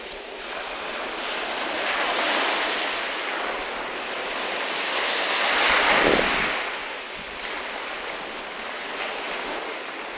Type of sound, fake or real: real